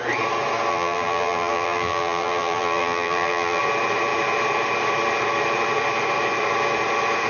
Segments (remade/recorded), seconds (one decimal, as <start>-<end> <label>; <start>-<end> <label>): 0.0-0.7 recorded; 0.7-3.6 remade; 3.6-7.3 recorded